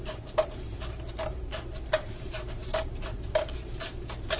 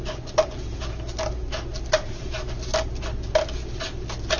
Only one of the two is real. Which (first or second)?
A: second